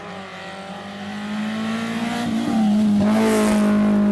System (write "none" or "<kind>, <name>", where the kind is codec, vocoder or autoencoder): none